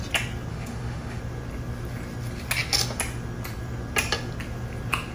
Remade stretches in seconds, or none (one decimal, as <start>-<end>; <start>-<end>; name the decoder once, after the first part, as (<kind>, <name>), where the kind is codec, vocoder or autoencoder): 0.5-1.2 (autoencoder, DAC-VAE)